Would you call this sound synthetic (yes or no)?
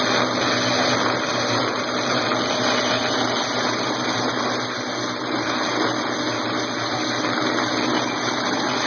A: no